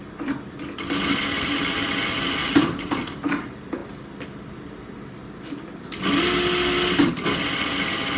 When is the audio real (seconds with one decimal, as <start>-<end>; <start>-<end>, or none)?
0.0-2.4; 3.2-8.2